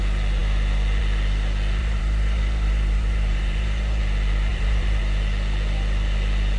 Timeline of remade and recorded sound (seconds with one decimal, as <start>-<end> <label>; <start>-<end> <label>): 0.0-1.8 recorded; 1.8-4.0 remade; 4.0-4.5 recorded; 4.5-5.0 remade; 5.0-6.6 recorded